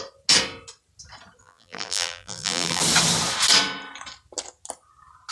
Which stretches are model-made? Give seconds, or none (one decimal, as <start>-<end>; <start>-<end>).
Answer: 1.4-2.8